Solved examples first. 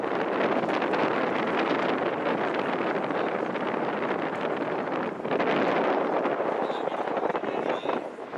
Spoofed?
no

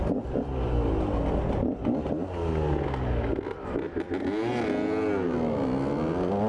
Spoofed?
no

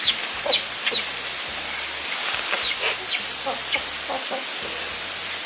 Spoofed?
no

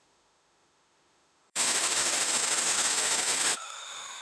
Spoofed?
yes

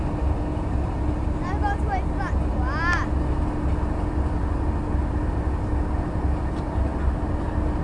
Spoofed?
no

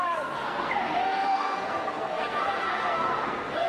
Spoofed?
yes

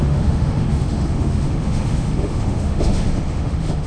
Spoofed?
yes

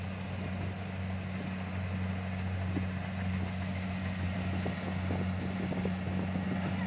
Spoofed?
no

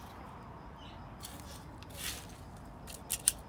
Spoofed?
no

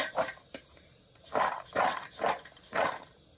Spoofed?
yes